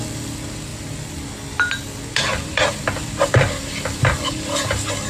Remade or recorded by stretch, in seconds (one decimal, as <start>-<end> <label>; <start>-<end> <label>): 0.0-5.1 recorded